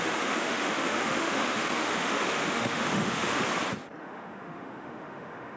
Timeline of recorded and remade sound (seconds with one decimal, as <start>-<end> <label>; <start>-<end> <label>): 0.0-3.4 remade; 3.4-4.0 recorded; 4.0-5.6 remade